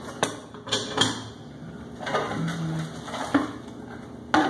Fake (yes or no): no